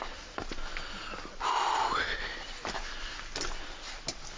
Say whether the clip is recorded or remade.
recorded